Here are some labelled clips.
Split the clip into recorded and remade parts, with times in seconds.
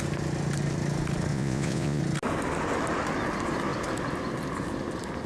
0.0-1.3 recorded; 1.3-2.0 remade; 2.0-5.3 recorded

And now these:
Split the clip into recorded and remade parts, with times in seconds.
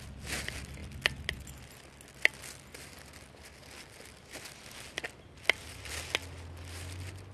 0.0-7.3 recorded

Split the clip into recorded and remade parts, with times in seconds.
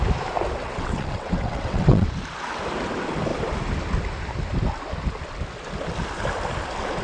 0.0-0.6 recorded; 0.6-2.1 remade; 2.1-7.0 recorded